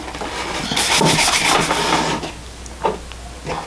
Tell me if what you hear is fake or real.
real